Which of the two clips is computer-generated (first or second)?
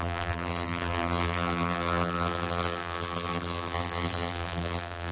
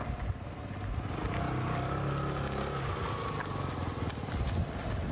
first